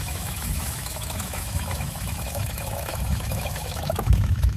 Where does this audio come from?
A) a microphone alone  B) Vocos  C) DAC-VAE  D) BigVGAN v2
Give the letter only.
C